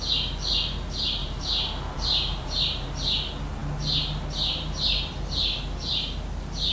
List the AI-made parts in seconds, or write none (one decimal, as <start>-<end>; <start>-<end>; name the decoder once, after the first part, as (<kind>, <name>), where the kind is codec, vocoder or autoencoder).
1.2-2.6 (vocoder, BigVGAN v2)